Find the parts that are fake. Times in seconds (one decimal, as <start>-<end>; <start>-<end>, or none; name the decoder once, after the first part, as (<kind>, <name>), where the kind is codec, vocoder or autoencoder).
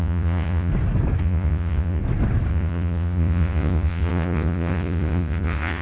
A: 0.0-0.7 (vocoder, Vocos); 1.2-2.0; 2.5-5.8